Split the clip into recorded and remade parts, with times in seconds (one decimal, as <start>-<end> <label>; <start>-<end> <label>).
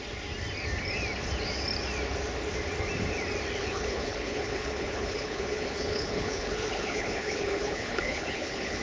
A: 0.0-3.6 recorded; 3.6-8.8 remade